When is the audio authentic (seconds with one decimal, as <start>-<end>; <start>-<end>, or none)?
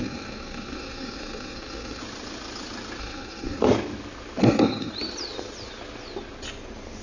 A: 2.0-3.0; 3.6-4.4; 4.9-7.0